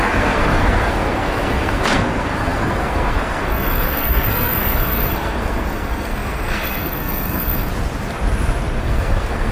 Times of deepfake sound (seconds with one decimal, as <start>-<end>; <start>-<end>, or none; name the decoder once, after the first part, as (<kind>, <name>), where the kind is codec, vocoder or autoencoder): 0.0-7.7 (codec, SNAC); 8.8-9.5